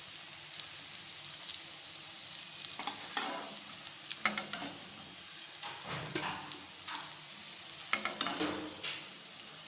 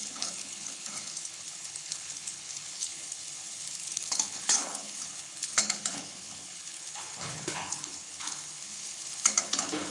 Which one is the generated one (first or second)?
second